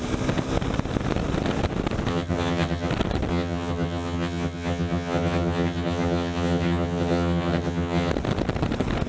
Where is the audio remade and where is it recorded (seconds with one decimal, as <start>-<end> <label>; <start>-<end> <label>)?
0.0-2.1 recorded; 2.1-2.9 remade; 2.9-3.3 recorded; 3.3-8.1 remade; 8.1-9.1 recorded